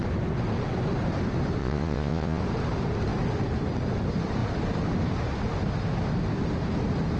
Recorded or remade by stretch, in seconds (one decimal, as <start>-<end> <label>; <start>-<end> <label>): 0.0-1.6 recorded; 1.6-2.4 remade; 2.4-7.2 recorded

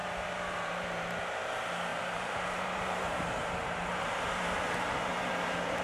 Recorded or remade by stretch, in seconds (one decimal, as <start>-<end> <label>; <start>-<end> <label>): 0.0-1.2 remade; 1.2-1.9 recorded; 1.9-5.8 remade

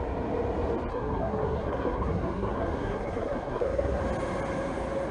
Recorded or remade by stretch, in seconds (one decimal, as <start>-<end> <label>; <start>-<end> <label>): 0.0-0.9 recorded; 0.9-4.0 remade; 4.0-5.1 recorded

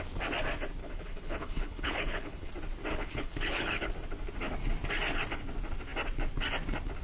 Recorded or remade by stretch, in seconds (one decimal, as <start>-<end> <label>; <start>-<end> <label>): 0.0-0.8 recorded; 0.8-2.5 remade; 2.5-2.9 recorded; 2.9-3.9 remade; 3.9-7.0 recorded